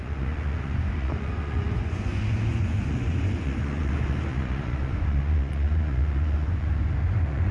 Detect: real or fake fake